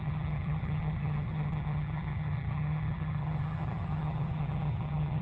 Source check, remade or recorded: remade